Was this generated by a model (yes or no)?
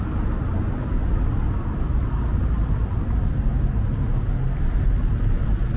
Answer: no